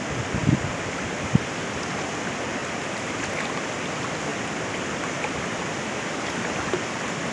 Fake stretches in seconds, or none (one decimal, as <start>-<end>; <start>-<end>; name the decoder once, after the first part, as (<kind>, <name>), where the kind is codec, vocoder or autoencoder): 0.0-0.4 (vocoder, BigVGAN v2); 2.0-2.6; 3.7-7.3